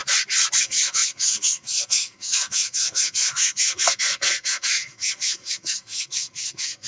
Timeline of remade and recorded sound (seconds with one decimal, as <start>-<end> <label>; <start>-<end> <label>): 0.0-0.6 recorded; 0.6-6.9 remade